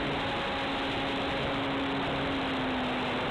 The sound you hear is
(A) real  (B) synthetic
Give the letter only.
B